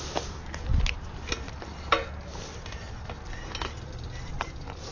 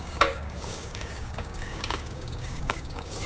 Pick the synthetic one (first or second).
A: second